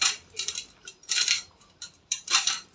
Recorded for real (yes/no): no